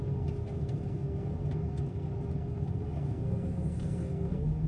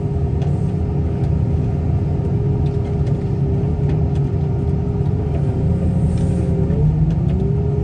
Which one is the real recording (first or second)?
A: second